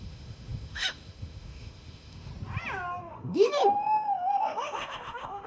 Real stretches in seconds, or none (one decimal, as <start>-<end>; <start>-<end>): 2.3-3.0